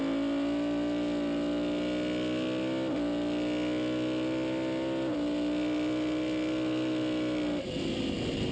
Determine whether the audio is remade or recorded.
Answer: recorded